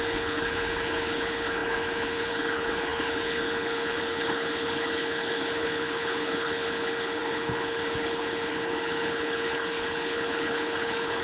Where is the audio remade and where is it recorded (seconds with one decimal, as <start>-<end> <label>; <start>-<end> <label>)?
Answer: 0.0-11.2 remade